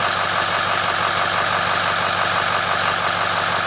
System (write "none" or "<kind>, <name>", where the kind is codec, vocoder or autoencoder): none